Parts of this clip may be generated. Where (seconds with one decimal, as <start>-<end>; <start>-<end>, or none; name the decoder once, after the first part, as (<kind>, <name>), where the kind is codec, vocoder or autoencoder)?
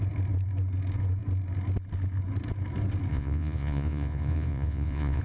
3.1-5.2 (vocoder, Vocos)